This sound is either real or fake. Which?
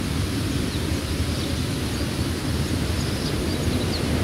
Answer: real